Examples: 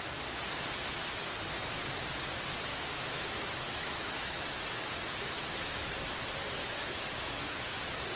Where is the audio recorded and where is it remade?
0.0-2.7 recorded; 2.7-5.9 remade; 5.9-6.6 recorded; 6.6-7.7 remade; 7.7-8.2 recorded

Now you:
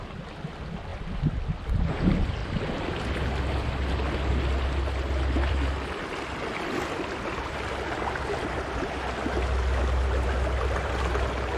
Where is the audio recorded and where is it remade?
0.0-11.6 recorded

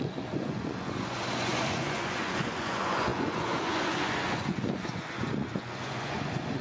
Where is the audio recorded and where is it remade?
0.0-6.6 remade

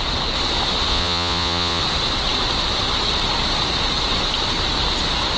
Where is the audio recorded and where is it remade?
0.0-0.9 recorded; 0.9-1.8 remade; 1.8-5.4 recorded

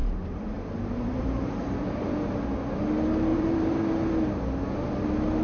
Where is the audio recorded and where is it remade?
0.0-2.0 remade; 2.0-3.3 recorded; 3.3-3.8 remade; 3.8-5.4 recorded

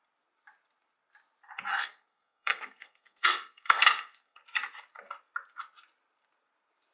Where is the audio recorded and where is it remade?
0.0-1.7 recorded; 1.7-4.4 remade; 4.4-6.9 recorded

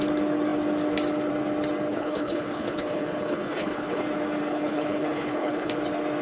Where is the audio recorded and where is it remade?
0.0-1.9 recorded; 1.9-4.0 remade; 4.0-4.4 recorded; 4.4-5.7 remade; 5.7-6.2 recorded

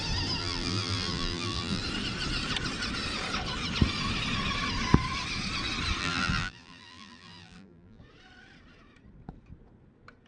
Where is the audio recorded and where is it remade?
0.0-0.4 recorded; 0.4-1.8 remade; 1.8-6.0 recorded; 6.0-8.0 remade; 8.0-10.3 recorded